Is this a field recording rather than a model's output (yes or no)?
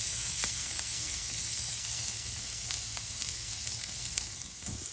no